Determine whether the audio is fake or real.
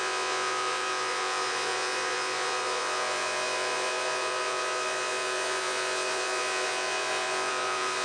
fake